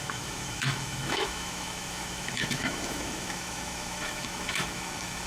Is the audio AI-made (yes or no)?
yes